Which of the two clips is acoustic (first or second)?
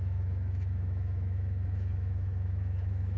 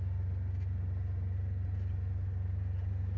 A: second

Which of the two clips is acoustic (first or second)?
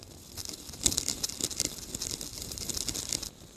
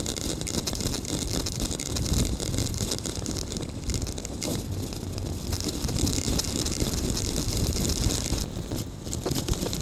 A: first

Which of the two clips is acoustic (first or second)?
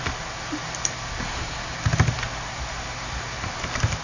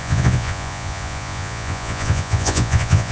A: first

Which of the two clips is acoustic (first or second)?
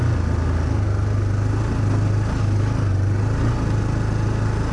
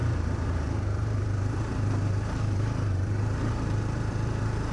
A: first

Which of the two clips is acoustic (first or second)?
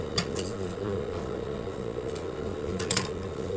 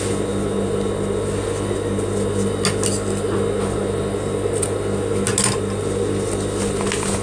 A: second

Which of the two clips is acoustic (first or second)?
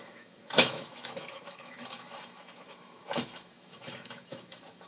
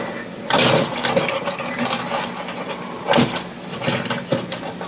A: second